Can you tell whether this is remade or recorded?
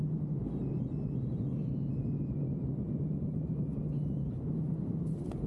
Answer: recorded